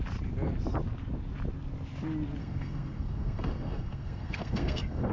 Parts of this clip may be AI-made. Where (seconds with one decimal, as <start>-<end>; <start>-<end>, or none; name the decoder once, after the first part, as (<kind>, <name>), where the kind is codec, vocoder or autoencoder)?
2.4-5.1 (codec, SNAC)